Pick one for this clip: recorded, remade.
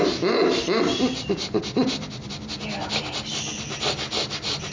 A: recorded